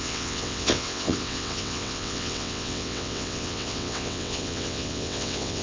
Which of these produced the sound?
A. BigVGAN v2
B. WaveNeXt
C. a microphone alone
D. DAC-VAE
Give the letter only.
B